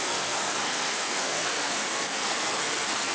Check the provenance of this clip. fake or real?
fake